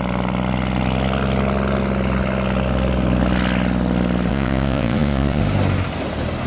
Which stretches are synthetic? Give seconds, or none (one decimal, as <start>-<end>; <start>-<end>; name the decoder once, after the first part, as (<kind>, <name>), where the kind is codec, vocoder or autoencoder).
4.3-5.4 (vocoder, Vocos)

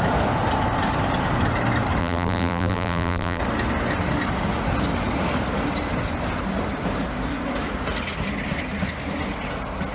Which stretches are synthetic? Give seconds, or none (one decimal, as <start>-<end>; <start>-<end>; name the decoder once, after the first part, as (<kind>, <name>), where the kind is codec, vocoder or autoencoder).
2.0-3.4 (vocoder, BigVGAN v2)

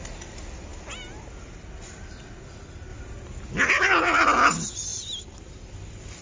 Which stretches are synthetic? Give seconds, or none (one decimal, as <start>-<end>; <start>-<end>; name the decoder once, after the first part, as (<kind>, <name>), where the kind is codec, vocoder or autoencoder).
none